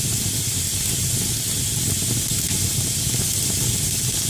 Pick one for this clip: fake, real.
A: real